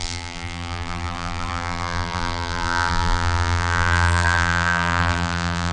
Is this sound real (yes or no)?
no